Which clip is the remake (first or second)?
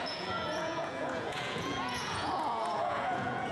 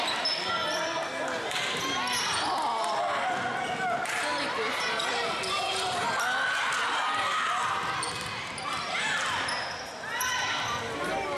first